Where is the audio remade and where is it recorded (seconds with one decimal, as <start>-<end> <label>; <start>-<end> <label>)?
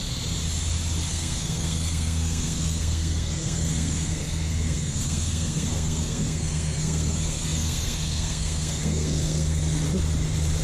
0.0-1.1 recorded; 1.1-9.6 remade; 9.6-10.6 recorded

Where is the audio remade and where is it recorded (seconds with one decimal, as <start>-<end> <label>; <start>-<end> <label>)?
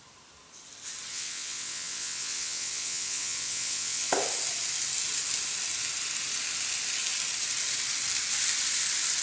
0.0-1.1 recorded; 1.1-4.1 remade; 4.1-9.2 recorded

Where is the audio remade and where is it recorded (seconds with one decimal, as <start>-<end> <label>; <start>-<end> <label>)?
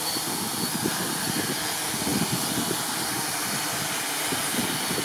0.0-5.0 recorded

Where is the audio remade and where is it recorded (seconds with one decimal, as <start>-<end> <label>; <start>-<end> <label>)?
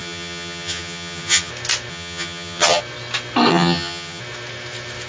0.0-1.5 remade; 1.5-1.9 recorded; 1.9-2.8 remade; 2.8-3.5 recorded; 3.5-4.2 remade; 4.2-5.1 recorded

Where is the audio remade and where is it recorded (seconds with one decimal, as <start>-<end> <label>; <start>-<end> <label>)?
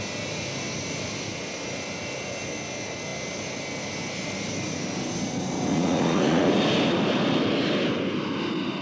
0.0-5.7 recorded; 5.7-6.5 remade; 6.5-8.8 recorded